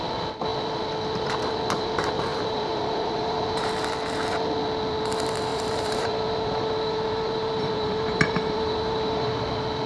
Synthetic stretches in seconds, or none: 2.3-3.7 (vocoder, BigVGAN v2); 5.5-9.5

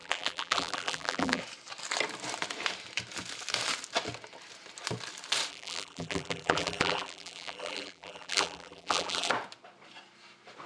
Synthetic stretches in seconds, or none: 0.0-1.4 (vocoder, BigVGAN v2); 5.5-9.3

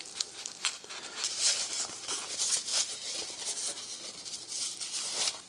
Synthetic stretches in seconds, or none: none